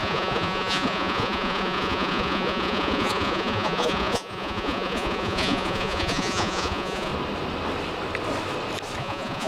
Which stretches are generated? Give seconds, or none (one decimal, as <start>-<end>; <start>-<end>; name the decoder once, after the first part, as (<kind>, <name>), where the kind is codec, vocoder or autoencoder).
0.0-7.1 (vocoder, Vocos); 9.0-9.5